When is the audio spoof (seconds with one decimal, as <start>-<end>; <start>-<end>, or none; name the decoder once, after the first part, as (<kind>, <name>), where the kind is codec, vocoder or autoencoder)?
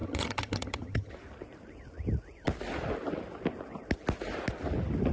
0.0-1.1 (vocoder, HiFi-GAN)